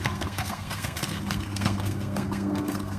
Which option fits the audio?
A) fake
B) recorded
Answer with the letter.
A